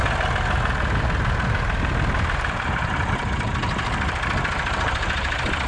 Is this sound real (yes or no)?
yes